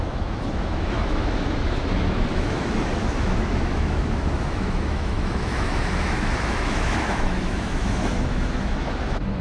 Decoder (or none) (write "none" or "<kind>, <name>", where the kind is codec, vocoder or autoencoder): autoencoder, DAC-VAE